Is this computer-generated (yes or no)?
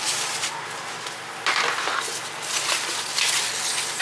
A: no